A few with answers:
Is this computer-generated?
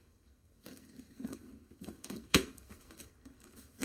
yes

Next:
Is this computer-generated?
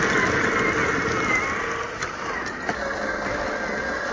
no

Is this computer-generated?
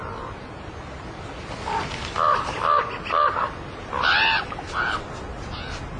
no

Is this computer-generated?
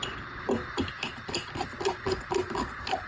no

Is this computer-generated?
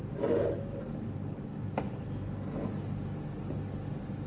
no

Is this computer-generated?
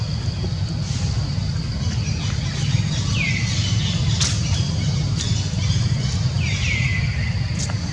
no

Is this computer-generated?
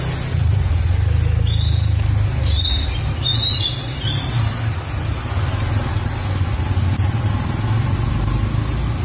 no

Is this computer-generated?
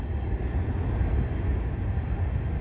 no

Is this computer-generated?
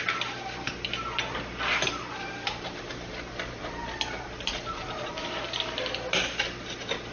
no